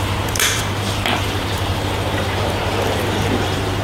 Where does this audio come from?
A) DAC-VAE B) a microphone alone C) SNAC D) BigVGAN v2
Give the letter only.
D